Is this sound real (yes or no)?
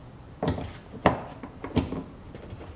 no